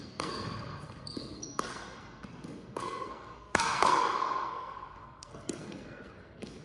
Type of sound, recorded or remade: remade